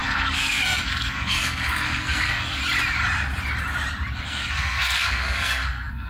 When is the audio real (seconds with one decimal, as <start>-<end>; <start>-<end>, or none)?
2.6-4.2